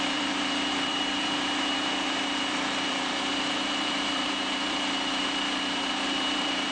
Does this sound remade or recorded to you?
remade